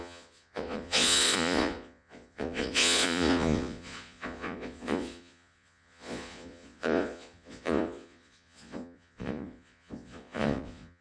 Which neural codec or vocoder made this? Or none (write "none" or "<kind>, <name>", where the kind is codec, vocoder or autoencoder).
vocoder, Vocos